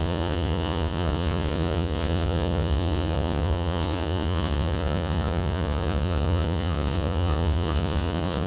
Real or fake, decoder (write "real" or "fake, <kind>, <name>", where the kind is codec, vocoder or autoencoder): fake, vocoder, Vocos